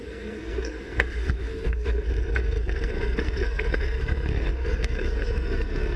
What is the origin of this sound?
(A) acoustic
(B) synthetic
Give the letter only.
B